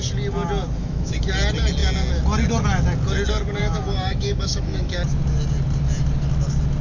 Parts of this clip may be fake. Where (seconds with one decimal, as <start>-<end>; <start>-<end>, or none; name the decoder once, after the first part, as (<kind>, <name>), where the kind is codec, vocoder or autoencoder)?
0.8-1.3 (autoencoder, DAC-VAE); 3.6-5.0

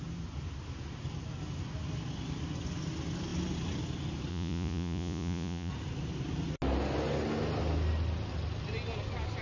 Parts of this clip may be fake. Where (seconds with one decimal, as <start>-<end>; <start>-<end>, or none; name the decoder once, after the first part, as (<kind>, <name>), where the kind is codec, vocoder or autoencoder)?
4.3-5.7 (vocoder, Vocos)